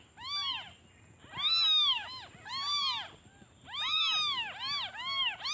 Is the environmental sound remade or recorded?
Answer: recorded